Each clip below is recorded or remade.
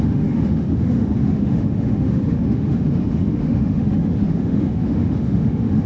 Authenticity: remade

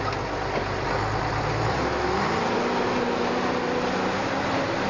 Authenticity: recorded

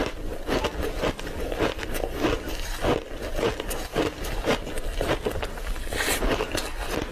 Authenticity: recorded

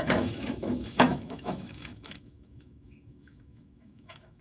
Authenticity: remade